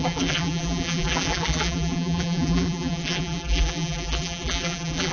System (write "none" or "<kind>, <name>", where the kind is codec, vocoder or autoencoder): vocoder, BigVGAN v2